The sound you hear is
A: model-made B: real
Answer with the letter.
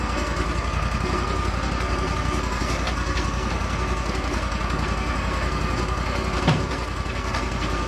A